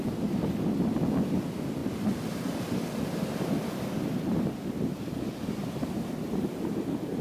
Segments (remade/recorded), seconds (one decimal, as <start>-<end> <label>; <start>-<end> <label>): 0.0-1.8 recorded; 1.8-5.1 remade; 5.1-5.6 recorded; 5.6-6.6 remade; 6.6-7.2 recorded